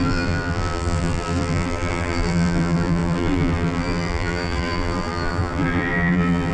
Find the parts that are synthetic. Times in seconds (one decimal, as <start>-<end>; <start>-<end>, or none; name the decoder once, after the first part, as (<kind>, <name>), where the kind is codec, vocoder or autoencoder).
0.0-6.5 (vocoder, BigVGAN v2)